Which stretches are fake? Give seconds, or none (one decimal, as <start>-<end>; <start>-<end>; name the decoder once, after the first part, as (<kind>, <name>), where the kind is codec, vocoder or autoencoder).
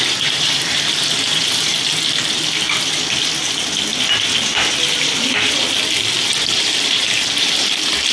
0.0-1.7 (vocoder, BigVGAN v2); 6.4-8.1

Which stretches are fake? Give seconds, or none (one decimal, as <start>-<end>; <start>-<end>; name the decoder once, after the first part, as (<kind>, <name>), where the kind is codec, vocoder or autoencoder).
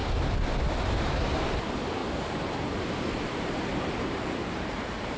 2.0-5.2 (vocoder, BigVGAN v2)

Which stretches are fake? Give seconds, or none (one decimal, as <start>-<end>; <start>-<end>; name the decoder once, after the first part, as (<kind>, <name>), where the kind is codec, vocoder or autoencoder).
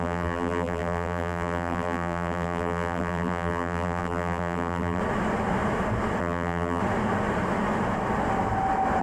0.0-5.0 (vocoder, BigVGAN v2); 6.2-6.8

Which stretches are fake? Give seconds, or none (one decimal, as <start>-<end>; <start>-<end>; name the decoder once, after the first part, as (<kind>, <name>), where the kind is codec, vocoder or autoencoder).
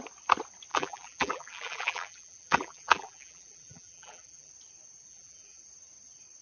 0.7-4.5 (vocoder, BigVGAN v2); 5.1-5.6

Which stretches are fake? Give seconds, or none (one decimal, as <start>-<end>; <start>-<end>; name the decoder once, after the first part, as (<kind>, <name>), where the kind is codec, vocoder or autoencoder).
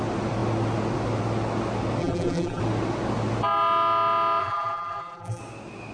2.0-2.6 (vocoder, BigVGAN v2); 4.4-5.4